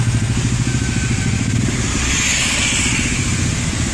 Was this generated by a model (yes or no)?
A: no